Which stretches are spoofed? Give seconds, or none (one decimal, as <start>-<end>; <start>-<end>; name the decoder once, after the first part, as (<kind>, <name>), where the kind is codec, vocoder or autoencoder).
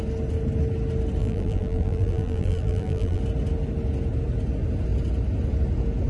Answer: 1.2-3.2 (vocoder, BigVGAN v2)